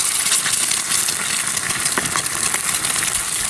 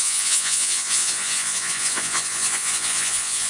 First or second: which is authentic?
first